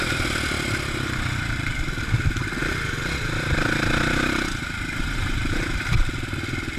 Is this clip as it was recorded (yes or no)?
no